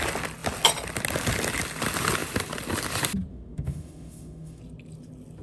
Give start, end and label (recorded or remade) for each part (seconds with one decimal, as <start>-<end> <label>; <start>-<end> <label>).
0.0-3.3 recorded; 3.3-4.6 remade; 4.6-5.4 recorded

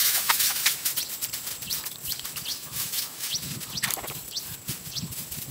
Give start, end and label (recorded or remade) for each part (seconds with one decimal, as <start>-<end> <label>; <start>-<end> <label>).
0.0-0.6 remade; 0.6-2.5 recorded; 2.5-3.3 remade; 3.3-5.5 recorded

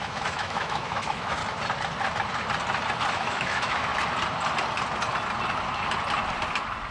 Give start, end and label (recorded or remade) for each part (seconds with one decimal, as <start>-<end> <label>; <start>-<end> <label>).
0.0-1.4 remade; 1.4-3.1 recorded; 3.1-3.9 remade; 3.9-6.9 recorded

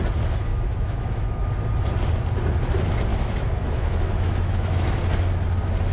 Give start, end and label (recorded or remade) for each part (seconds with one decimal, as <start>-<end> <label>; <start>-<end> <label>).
0.0-0.5 recorded; 0.5-1.5 remade; 1.5-3.1 recorded; 3.1-5.0 remade; 5.0-5.9 recorded

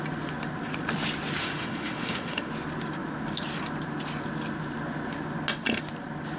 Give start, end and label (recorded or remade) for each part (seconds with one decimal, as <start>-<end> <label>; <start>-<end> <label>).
0.0-1.4 recorded; 1.4-2.5 remade; 2.5-6.4 recorded

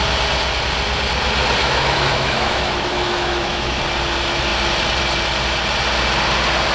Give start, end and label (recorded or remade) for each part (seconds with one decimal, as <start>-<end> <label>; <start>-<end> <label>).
0.0-1.6 recorded; 1.6-3.8 remade; 3.8-6.7 recorded

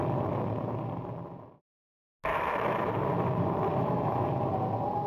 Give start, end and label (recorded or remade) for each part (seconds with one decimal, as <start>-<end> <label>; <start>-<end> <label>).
0.0-2.3 recorded; 2.3-2.9 remade; 2.9-3.7 recorded; 3.7-4.3 remade; 4.3-5.1 recorded